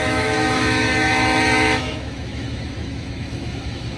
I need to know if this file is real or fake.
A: fake